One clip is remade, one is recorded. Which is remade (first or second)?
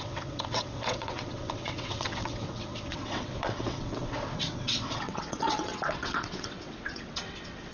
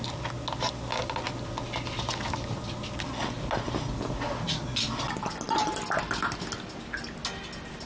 first